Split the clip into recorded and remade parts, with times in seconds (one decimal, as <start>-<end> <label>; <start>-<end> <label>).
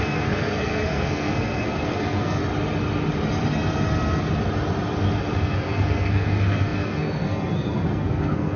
0.0-2.4 remade; 2.4-5.4 recorded; 5.4-8.6 remade